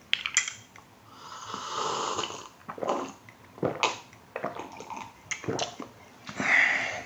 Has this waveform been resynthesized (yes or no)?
no